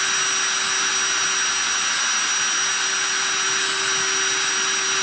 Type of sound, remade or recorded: recorded